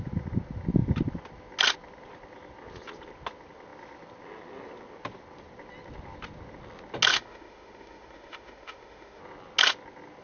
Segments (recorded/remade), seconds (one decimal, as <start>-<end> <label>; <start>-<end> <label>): 0.0-7.1 recorded; 7.1-9.2 remade; 9.2-10.2 recorded